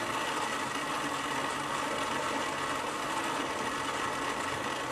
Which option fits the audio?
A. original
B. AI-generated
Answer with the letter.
A